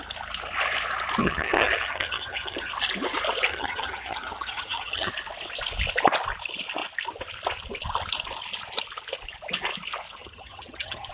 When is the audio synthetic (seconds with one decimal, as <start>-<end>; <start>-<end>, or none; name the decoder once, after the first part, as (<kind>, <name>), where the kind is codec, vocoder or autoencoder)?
1.2-2.7 (vocoder, HiFi-GAN); 3.5-5.1; 10.2-11.1